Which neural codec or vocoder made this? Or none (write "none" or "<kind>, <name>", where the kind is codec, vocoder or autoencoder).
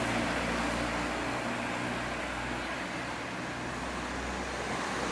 none